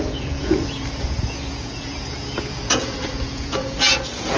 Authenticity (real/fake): fake